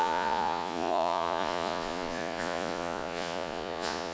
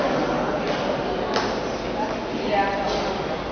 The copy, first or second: first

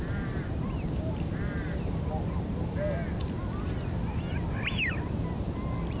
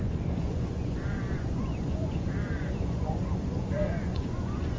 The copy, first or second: second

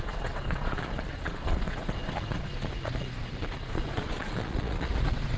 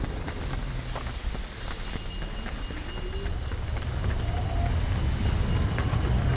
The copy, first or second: first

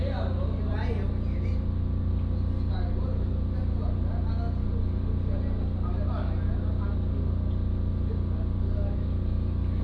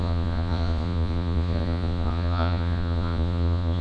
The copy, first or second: second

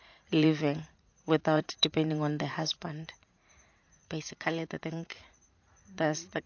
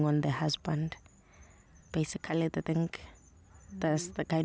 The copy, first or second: first